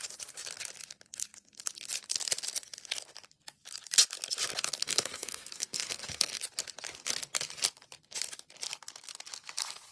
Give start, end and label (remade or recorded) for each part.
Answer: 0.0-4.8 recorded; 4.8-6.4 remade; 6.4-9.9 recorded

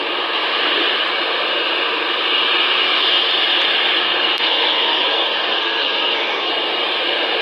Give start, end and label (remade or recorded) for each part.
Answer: 0.0-4.0 recorded; 4.0-6.5 remade; 6.5-7.4 recorded

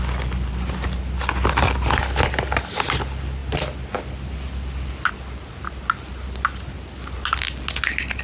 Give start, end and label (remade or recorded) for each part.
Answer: 0.0-8.2 recorded

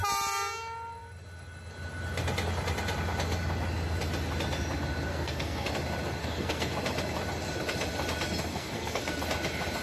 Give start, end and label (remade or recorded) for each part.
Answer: 0.0-5.1 recorded; 5.1-5.7 remade; 5.7-6.2 recorded; 6.2-6.7 remade; 6.7-8.5 recorded; 8.5-9.2 remade; 9.2-9.8 recorded

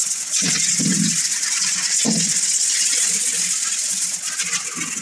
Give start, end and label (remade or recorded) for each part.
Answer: 0.0-5.0 recorded

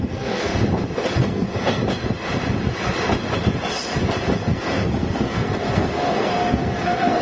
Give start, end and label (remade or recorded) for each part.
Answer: 0.0-0.5 remade; 0.5-1.2 recorded; 1.2-1.8 remade; 1.8-4.5 recorded; 4.5-7.2 remade

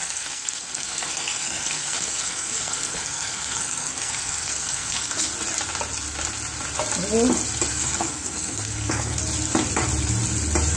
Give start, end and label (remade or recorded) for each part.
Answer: 0.0-5.3 remade; 5.3-7.7 recorded; 7.7-9.2 remade; 9.2-10.8 recorded

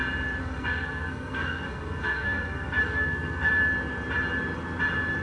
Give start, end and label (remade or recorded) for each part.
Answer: 0.0-0.4 recorded; 0.4-3.5 remade; 3.5-5.2 recorded